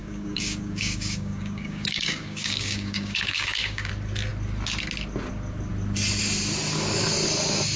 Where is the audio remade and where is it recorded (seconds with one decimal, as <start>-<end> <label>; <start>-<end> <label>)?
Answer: 0.0-3.9 remade; 3.9-7.8 recorded